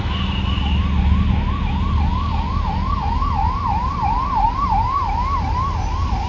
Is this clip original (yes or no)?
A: yes